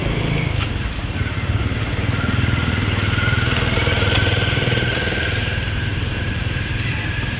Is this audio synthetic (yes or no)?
no